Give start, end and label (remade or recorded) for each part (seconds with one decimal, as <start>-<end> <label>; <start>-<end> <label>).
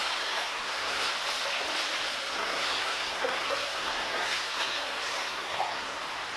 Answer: 0.0-1.1 remade; 1.1-2.2 recorded; 2.2-6.0 remade; 6.0-6.4 recorded